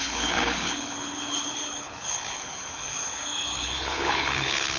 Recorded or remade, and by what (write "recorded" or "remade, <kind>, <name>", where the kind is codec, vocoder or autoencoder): remade, codec, HILCodec